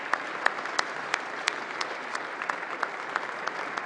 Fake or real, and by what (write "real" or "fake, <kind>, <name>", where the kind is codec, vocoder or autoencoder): fake, vocoder, BigVGAN v2